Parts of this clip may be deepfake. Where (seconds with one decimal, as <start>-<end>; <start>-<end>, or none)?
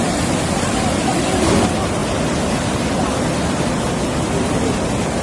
none